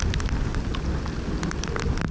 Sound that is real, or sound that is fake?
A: real